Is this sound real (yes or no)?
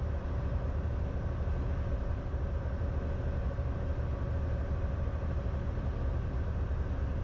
yes